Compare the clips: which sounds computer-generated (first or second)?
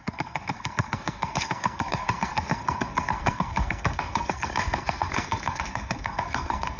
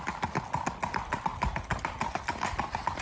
first